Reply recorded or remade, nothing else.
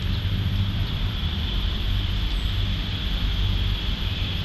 remade